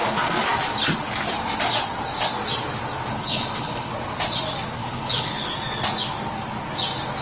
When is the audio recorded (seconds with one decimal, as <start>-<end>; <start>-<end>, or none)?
0.0-3.1; 3.9-4.8; 5.5-7.2